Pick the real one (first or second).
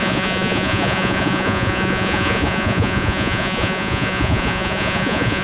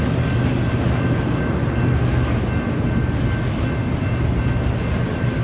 second